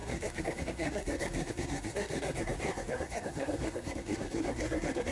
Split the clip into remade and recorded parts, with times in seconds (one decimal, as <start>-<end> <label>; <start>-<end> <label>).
0.0-5.1 remade